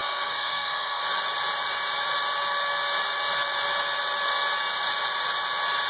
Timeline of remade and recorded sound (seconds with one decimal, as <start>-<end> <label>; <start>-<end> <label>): 0.0-1.0 remade; 1.0-5.9 recorded